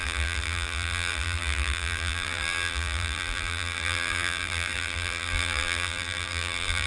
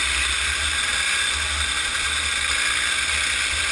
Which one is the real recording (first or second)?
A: second